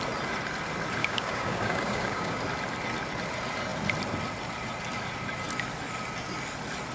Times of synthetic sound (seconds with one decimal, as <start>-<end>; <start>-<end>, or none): 1.0-2.4